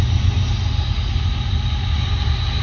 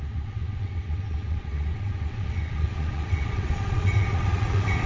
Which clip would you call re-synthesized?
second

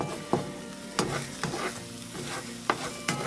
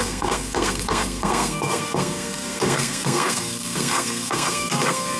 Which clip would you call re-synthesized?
second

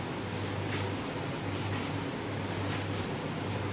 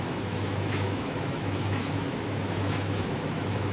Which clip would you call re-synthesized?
second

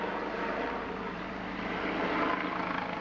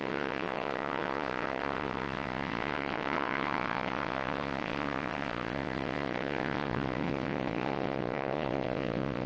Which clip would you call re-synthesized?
second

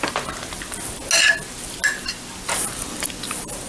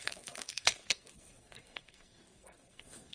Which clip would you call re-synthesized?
second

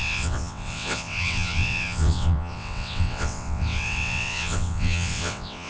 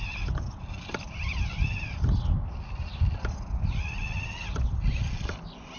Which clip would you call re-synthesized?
first